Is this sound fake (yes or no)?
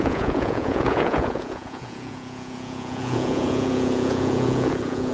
yes